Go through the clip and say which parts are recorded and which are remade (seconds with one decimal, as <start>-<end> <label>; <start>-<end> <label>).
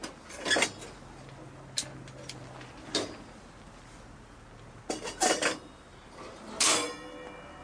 0.0-7.6 recorded